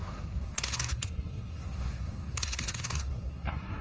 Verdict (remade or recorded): remade